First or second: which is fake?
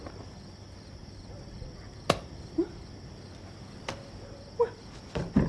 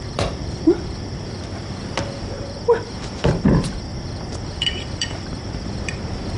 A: second